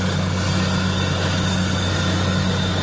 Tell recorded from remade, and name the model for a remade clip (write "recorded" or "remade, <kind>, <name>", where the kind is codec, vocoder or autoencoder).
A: recorded